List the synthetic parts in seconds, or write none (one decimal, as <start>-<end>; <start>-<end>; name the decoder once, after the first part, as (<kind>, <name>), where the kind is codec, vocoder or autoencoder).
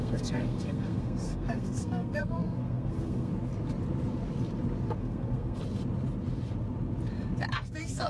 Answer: 0.0-3.3 (codec, SNAC); 5.0-5.6; 7.5-8.1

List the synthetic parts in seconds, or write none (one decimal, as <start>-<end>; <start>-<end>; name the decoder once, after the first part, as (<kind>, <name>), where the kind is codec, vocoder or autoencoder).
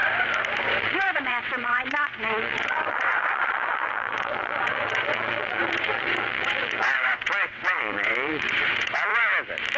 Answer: 0.8-9.1 (vocoder, WaveNeXt)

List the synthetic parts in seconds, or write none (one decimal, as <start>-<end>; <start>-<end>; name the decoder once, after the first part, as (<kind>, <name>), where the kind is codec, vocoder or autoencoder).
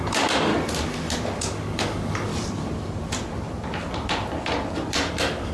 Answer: 0.0-0.5 (codec, DAC); 1.4-2.3; 5.1-5.5